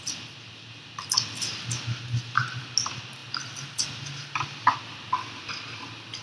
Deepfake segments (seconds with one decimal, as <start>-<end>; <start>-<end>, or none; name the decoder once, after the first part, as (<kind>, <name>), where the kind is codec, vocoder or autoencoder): 3.2-5.5 (vocoder, BigVGAN v2)